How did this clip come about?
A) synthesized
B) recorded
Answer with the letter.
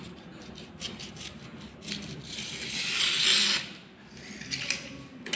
B